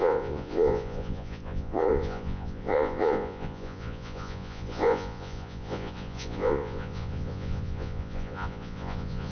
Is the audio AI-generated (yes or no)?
yes